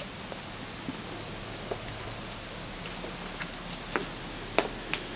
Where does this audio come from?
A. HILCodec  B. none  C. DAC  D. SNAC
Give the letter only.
B